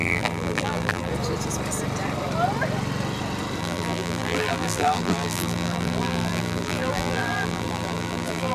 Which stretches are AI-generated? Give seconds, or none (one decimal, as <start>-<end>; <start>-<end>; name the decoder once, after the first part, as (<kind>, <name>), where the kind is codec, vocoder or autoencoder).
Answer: 0.0-1.1 (vocoder, BigVGAN v2); 3.6-8.5